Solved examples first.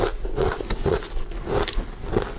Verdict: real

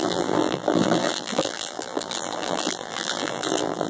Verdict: fake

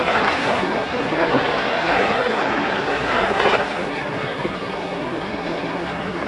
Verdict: fake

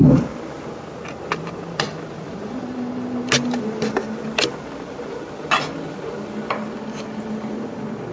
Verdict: real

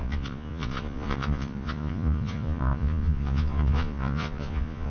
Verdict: fake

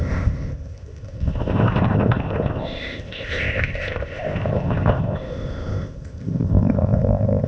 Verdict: fake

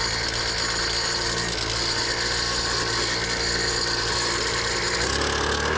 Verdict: real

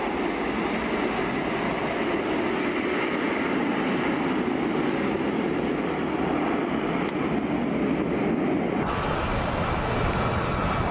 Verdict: real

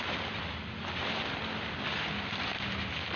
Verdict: real